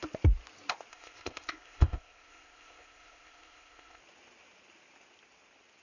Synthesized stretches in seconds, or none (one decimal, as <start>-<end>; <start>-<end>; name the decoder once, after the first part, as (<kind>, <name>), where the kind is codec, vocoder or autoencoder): 0.9-4.0 (codec, ZipCodec)